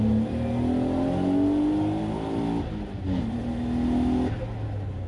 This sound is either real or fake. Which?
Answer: real